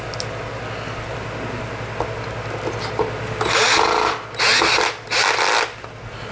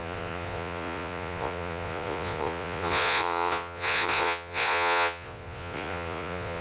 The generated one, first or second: second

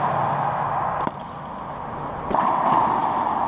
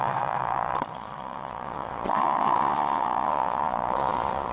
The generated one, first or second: second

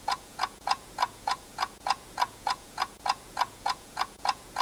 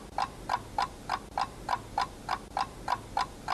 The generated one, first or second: first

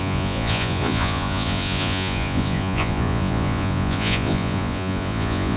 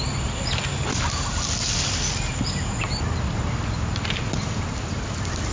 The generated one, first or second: first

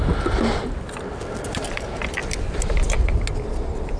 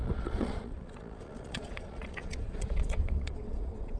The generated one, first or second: second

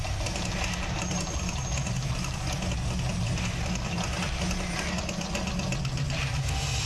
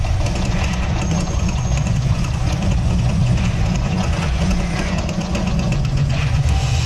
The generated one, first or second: second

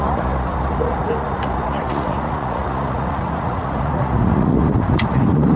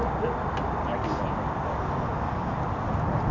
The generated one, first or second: first